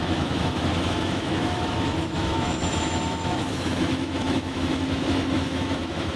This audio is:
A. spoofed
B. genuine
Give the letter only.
A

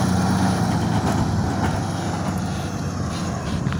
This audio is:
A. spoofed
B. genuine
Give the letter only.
B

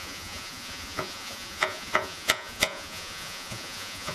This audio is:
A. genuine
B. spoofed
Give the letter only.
B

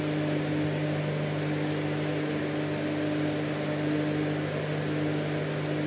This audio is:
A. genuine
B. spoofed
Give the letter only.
A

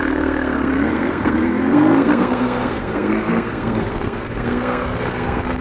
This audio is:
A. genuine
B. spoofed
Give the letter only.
B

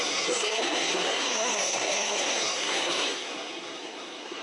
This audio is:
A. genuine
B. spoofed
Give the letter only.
B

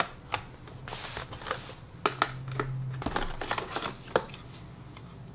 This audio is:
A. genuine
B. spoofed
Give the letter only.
A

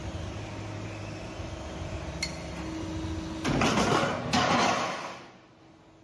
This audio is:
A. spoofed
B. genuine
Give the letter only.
B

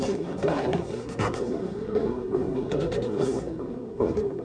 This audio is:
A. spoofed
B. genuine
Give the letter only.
A